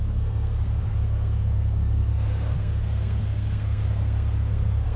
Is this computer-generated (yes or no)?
yes